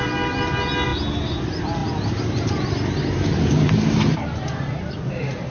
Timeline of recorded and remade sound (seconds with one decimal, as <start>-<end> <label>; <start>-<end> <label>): 0.0-1.8 recorded; 1.8-5.1 remade; 5.1-5.5 recorded